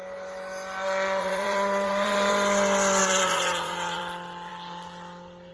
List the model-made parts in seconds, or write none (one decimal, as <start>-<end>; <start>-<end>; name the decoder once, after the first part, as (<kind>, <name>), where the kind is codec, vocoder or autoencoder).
1.2-2.3 (vocoder, Vocos); 3.0-4.0